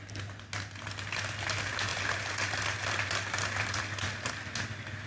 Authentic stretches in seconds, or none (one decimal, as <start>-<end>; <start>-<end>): 0.0-1.9; 4.3-5.1